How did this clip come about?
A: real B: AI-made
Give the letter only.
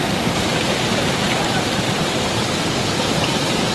B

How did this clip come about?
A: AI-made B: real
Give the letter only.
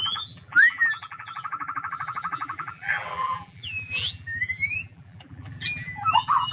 A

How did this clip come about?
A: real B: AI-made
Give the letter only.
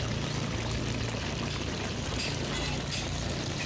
B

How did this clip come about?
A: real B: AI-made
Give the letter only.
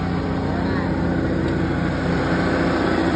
A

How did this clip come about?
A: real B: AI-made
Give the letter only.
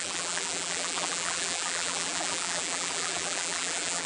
B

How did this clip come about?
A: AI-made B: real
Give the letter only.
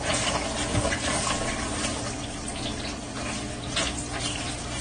B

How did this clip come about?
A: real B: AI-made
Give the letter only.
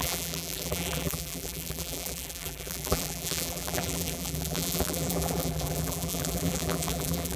B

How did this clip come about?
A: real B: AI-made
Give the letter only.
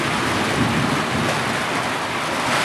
A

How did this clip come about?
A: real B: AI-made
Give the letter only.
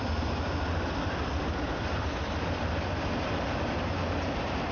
B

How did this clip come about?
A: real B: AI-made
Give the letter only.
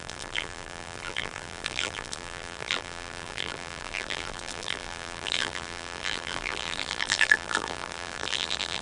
B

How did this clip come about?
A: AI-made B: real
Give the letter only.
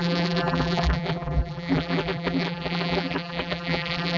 A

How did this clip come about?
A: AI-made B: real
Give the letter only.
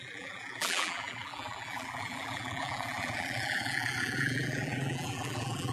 A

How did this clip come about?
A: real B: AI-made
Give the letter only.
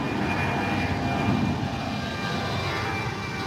A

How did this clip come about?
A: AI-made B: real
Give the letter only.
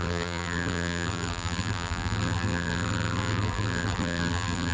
A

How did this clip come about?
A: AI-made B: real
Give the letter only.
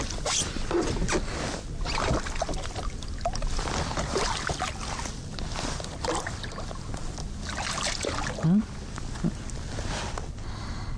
B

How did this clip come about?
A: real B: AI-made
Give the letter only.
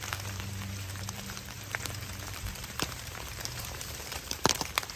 B